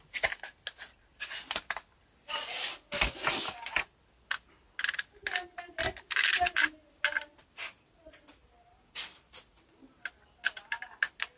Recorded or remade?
recorded